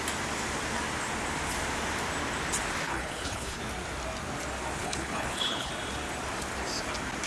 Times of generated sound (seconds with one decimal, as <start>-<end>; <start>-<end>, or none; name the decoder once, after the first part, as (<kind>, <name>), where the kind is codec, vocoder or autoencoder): 2.8-3.6 (codec, HILCodec); 4.8-5.7